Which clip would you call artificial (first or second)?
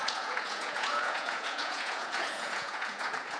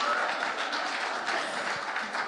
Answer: first